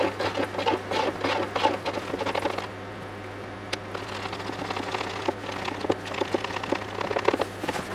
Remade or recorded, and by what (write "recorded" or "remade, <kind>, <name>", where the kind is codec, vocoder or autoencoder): recorded